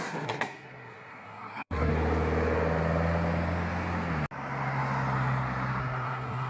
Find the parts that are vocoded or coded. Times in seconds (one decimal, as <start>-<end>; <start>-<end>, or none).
0.0-1.9; 5.8-6.5